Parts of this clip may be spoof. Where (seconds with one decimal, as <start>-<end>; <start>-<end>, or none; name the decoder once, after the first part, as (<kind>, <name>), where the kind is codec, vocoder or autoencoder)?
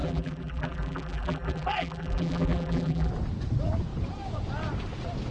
0.0-3.1 (vocoder, BigVGAN v2)